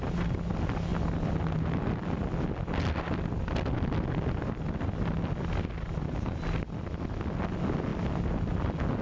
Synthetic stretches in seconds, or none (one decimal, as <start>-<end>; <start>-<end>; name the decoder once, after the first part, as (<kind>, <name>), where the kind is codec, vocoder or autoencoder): none

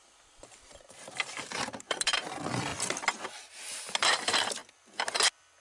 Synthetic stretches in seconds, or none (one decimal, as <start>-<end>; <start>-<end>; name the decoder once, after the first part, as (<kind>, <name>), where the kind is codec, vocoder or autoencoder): 0.0-2.7 (vocoder, BigVGAN v2); 4.0-4.6

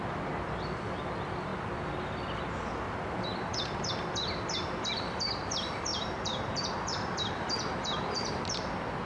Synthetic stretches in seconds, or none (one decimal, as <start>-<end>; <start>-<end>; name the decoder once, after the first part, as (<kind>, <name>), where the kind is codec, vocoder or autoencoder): 5.9-6.6 (vocoder, BigVGAN v2)

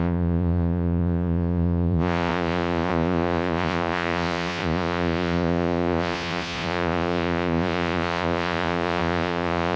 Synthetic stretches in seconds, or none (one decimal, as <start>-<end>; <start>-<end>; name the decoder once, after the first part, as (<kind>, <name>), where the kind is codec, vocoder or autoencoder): 0.0-9.8 (vocoder, Vocos)

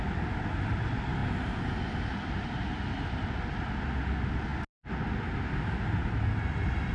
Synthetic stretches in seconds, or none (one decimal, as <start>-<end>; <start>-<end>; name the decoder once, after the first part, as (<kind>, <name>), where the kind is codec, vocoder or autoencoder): none